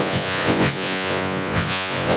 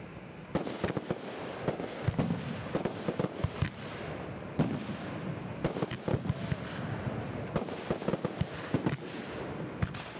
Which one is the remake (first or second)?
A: first